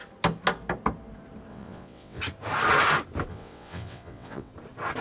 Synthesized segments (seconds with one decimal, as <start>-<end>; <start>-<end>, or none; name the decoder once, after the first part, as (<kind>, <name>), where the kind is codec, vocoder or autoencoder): 1.5-2.2 (vocoder, WaveNeXt); 3.3-4.5